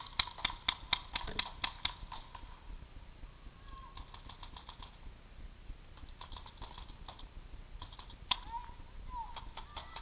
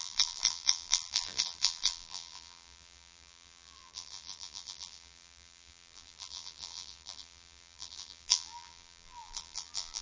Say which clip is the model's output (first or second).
second